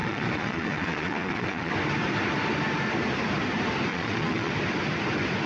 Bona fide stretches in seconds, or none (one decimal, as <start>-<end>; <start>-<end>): 1.7-3.9; 4.5-5.5